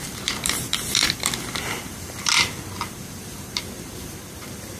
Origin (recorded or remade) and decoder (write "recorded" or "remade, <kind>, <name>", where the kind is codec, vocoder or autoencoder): remade, vocoder, BigVGAN v2